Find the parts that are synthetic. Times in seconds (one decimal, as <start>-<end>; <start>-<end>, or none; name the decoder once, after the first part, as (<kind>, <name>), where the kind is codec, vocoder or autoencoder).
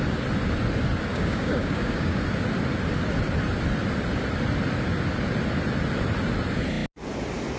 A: 1.1-2.2 (codec, DAC)